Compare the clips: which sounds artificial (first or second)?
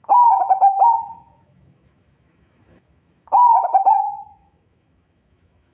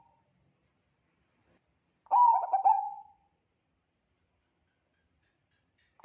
first